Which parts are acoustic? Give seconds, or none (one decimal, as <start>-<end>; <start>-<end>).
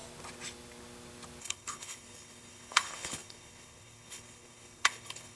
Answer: 0.0-1.4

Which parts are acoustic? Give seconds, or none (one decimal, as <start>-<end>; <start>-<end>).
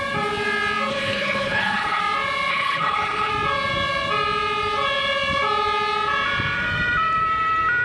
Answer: 0.0-0.9; 2.0-2.5; 3.3-7.8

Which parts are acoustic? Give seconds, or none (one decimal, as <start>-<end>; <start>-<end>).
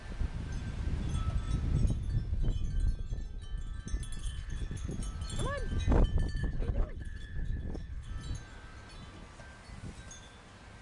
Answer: 0.0-4.2; 4.9-6.4; 8.1-10.8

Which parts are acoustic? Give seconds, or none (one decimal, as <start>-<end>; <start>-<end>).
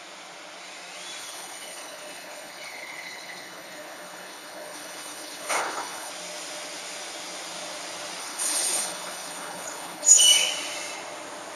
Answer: 0.0-1.2; 6.1-8.2; 10.2-11.6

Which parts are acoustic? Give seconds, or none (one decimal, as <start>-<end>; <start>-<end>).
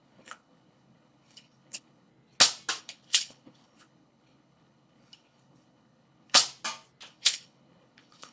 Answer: 2.1-2.8; 6.4-7.1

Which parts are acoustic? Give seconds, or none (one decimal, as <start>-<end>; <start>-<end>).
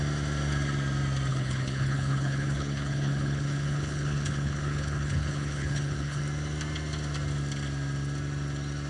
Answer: 0.0-1.3; 6.2-8.9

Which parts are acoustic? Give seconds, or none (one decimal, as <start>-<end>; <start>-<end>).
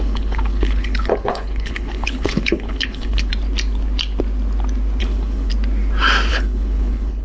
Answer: 3.3-5.0; 5.5-6.3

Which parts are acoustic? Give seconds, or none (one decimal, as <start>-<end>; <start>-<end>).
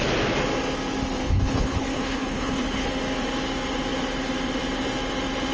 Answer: 0.0-1.2; 2.9-5.5